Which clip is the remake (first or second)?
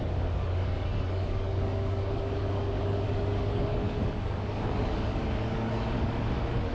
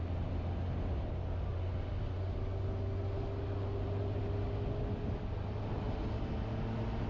first